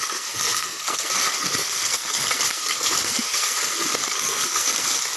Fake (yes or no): yes